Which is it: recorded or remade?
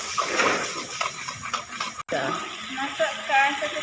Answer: recorded